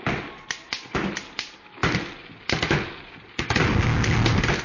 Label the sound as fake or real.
real